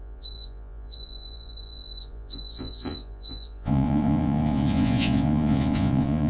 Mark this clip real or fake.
fake